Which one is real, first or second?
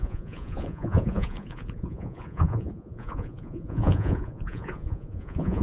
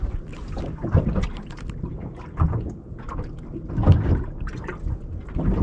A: second